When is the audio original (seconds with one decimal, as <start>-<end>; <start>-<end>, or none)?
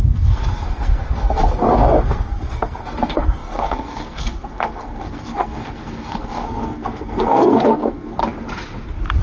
8.2-9.2